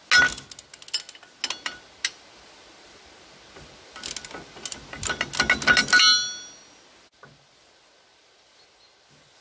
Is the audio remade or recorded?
recorded